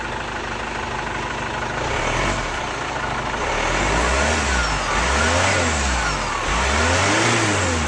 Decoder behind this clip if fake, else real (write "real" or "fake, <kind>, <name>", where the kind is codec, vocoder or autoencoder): real